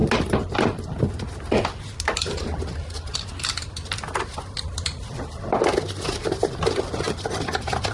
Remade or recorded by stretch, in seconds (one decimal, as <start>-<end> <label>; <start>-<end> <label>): 0.0-7.9 recorded